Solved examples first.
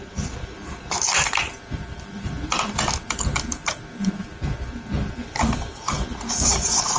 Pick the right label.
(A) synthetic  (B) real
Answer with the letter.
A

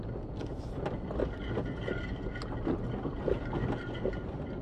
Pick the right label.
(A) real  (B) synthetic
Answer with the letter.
A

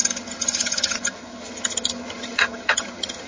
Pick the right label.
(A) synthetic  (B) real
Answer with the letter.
A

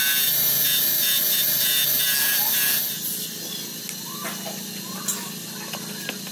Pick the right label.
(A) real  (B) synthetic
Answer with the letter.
A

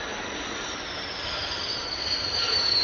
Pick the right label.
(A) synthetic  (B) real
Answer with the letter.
B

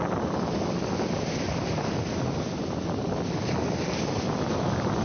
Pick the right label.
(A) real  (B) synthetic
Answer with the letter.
A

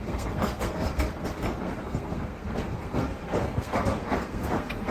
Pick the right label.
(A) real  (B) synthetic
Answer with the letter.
B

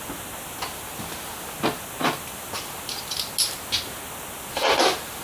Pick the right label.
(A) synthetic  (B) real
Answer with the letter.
B